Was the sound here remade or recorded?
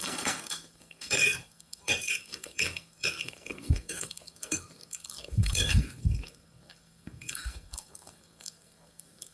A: remade